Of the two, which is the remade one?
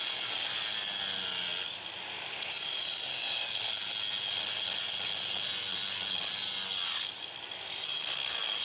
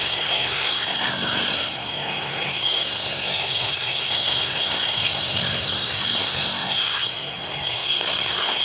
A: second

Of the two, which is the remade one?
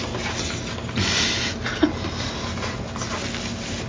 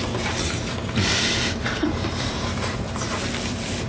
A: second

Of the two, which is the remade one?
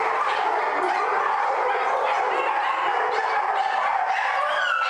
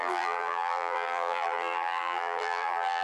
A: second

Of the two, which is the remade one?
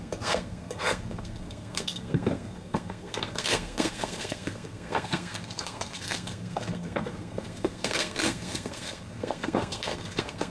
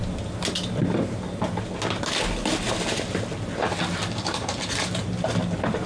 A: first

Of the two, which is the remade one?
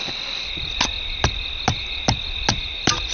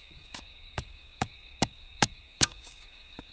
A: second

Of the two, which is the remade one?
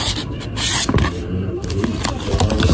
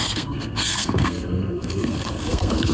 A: second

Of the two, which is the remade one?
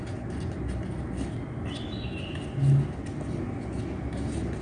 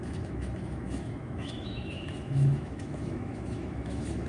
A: second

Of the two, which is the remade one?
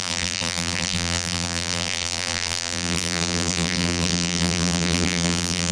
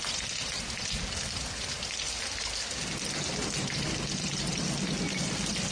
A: first